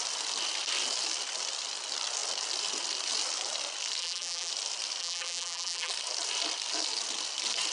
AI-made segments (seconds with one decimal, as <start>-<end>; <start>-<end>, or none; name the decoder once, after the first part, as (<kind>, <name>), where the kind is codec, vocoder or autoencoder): 4.0-4.5 (vocoder, BigVGAN v2); 5.0-5.9